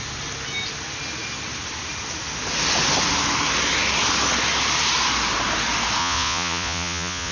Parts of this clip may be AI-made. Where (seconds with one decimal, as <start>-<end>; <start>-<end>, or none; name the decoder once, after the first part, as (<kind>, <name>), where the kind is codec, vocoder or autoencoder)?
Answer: 6.0-7.3 (vocoder, Vocos)